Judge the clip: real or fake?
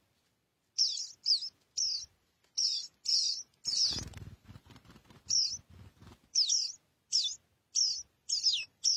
real